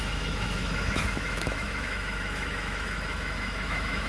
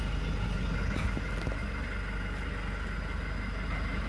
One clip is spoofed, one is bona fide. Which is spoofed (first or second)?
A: first